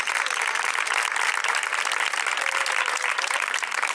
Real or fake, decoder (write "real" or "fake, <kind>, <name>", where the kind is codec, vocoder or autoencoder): real